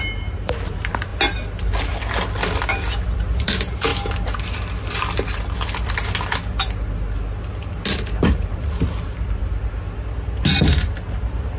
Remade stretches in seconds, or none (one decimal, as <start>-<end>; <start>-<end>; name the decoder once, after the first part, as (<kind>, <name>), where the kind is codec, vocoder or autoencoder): 0.0-1.1 (vocoder, BigVGAN v2); 3.4-3.9; 8.2-9.4; 11.1-11.6